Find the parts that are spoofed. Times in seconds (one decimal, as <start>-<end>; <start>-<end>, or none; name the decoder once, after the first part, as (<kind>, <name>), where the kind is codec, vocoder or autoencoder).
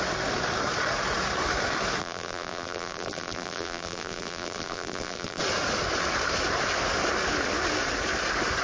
2.0-5.4 (vocoder, BigVGAN v2)